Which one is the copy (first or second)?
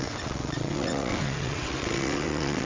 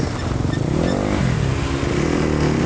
first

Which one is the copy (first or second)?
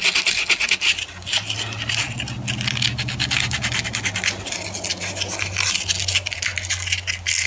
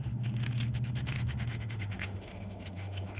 second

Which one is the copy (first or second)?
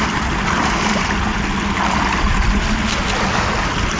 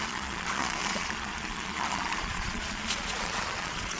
second